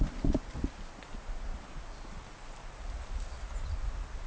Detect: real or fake real